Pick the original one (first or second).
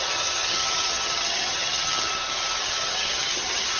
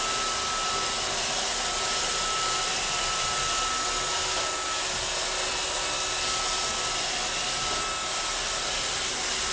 second